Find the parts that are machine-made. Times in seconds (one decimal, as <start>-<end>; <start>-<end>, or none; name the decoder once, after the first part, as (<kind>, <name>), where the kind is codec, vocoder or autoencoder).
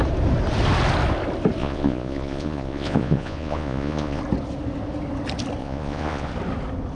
1.6-4.2 (vocoder, Vocos); 5.6-6.3